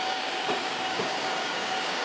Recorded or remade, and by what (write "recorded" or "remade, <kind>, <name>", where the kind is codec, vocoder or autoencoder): remade, codec, DAC